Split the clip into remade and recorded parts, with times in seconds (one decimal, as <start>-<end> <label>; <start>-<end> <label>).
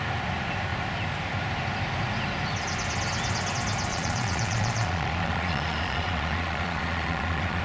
0.0-3.9 recorded; 3.9-7.6 remade